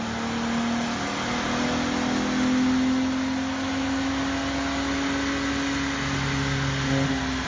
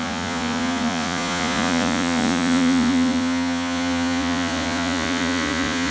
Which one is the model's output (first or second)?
second